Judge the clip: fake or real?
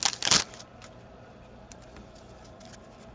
real